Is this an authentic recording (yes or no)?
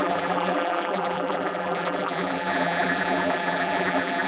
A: no